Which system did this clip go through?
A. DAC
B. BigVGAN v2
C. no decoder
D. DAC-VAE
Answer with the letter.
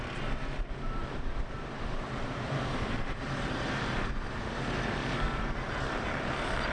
B